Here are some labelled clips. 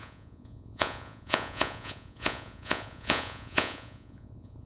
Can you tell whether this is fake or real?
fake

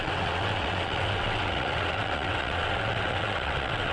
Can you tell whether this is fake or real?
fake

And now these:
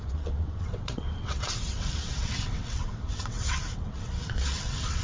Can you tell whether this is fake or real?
fake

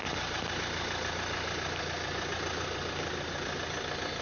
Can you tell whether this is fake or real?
real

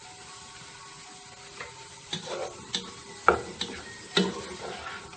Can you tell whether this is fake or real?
real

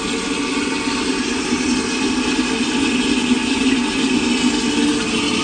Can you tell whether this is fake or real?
real